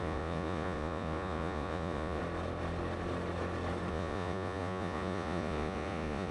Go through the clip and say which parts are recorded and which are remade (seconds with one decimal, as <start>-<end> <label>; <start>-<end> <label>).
0.0-2.2 remade; 2.2-3.9 recorded; 3.9-6.3 remade